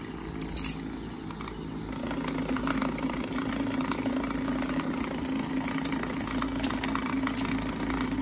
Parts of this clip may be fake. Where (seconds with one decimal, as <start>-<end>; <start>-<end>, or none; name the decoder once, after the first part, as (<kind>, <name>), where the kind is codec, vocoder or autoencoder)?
none